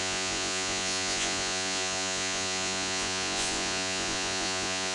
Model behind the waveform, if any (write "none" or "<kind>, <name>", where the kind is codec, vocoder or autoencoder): vocoder, Vocos